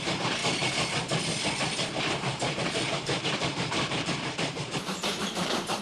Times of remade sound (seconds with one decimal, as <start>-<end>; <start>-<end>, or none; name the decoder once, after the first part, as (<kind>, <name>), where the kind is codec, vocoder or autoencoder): 0.0-0.4 (vocoder, BigVGAN v2); 2.0-5.8